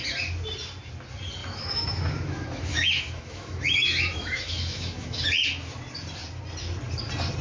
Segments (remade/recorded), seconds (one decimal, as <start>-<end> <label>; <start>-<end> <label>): 0.0-1.4 recorded; 1.4-5.2 remade; 5.2-7.4 recorded